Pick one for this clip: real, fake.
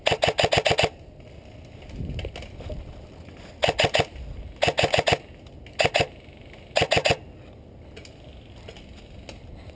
real